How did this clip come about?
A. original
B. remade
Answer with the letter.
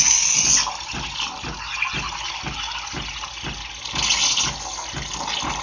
A